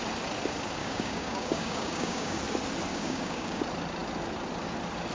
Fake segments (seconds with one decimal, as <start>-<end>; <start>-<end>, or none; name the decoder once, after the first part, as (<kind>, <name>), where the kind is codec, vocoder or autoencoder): 0.8-2.4 (codec, DAC); 2.9-3.6